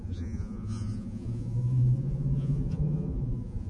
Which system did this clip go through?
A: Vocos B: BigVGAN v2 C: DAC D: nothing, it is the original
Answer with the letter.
A